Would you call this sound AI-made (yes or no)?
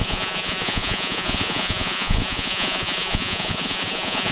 yes